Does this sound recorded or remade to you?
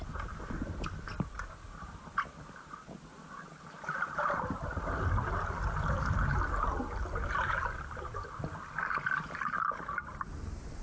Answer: recorded